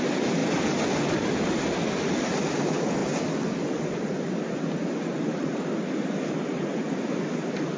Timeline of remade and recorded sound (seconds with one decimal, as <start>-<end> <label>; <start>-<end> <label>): 0.0-7.8 recorded